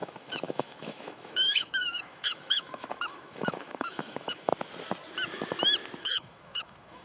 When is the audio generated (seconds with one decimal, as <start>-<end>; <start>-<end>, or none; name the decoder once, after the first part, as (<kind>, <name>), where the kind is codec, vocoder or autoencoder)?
0.0-4.5 (autoencoder, DAC-VAE); 6.0-7.0